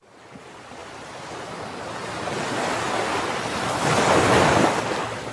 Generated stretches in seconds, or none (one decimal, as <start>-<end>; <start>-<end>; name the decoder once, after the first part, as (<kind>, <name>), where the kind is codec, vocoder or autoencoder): none